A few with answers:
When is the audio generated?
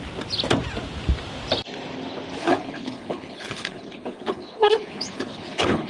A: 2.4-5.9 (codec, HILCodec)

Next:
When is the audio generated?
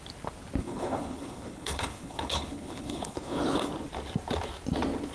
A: 0.6-3.7 (codec, HILCodec)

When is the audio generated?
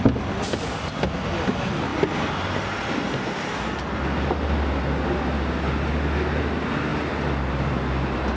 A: none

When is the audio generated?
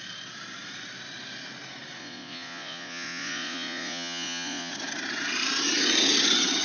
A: 2.0-4.7 (vocoder, Vocos)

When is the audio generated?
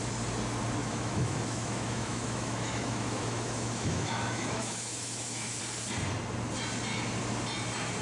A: 0.8-5.6 (autoencoder, DAC-VAE)